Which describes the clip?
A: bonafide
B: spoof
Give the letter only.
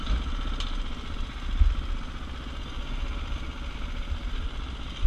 A